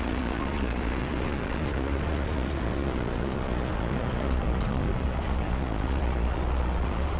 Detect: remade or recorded remade